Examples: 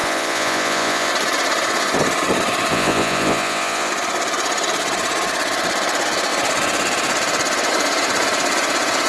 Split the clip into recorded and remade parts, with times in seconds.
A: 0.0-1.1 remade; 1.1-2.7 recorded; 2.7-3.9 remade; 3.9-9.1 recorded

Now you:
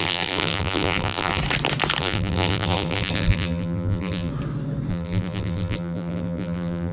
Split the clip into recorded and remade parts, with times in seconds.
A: 0.0-1.4 remade; 1.4-2.0 recorded; 2.0-4.3 remade; 4.3-4.9 recorded; 4.9-6.9 remade